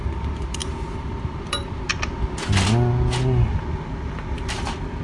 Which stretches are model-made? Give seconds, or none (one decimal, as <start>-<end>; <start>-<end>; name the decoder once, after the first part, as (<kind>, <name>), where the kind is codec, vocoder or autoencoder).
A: 0.0-0.6 (vocoder, BigVGAN v2); 1.4-1.9